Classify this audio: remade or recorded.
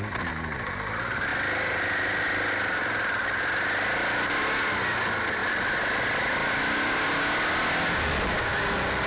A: recorded